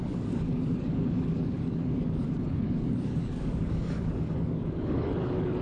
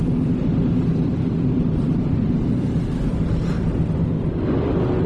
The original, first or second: second